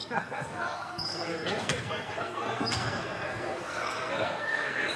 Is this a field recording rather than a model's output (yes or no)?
no